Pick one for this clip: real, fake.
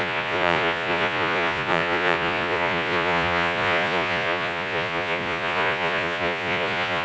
fake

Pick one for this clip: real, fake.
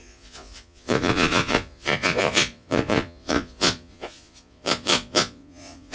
fake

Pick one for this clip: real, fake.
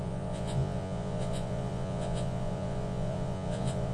fake